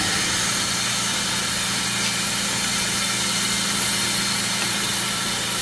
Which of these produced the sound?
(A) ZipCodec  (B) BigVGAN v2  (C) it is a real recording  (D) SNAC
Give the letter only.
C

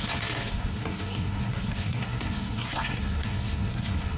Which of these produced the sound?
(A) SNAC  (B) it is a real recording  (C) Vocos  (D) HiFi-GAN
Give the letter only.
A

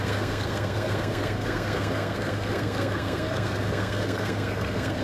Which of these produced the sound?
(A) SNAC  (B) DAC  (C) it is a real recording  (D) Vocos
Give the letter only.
A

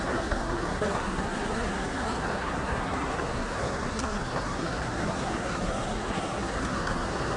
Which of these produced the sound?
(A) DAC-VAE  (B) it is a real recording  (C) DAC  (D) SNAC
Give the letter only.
D